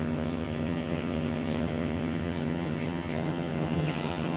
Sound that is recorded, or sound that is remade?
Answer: remade